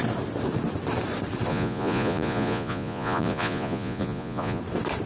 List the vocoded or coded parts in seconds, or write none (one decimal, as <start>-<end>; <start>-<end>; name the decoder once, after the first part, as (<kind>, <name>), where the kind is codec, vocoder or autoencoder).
1.5-4.6 (vocoder, Vocos)